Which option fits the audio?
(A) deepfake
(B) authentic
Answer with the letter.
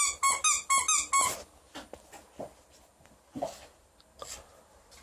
B